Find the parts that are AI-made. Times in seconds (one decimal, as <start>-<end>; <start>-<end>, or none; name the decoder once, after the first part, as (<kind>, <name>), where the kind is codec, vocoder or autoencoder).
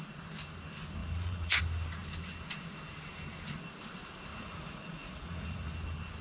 1.0-1.6 (vocoder, Vocos); 4.3-5.7